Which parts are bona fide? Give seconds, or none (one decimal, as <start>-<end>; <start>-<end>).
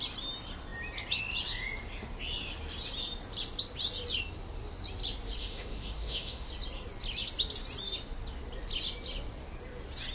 0.0-5.4; 6.5-10.1